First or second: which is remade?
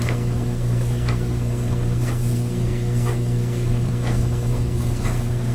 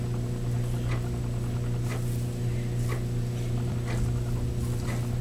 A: first